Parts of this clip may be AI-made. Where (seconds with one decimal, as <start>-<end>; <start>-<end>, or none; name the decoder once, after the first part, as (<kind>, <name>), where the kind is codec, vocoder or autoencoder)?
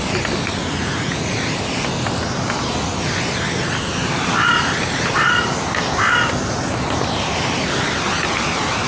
0.5-1.3 (vocoder, Vocos)